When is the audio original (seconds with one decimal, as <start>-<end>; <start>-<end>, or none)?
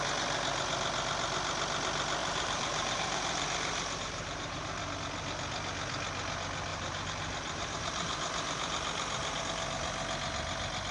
0.0-2.2; 4.9-6.7; 9.4-10.9